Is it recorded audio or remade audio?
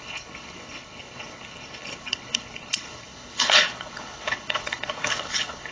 remade